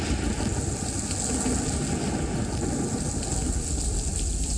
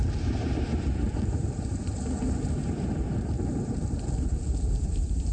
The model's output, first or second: second